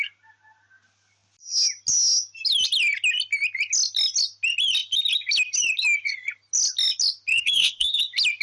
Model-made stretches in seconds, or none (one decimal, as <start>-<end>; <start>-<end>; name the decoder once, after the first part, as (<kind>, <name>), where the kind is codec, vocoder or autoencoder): 7.3-8.0 (codec, SNAC)